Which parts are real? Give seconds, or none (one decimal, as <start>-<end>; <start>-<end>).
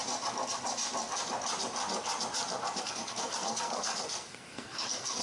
0.0-2.8